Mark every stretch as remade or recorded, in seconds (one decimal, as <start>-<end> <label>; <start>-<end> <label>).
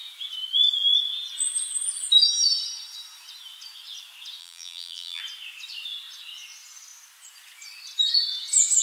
0.0-4.4 recorded; 4.4-5.2 remade; 5.2-8.8 recorded